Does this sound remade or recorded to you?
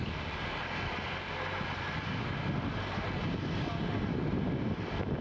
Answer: recorded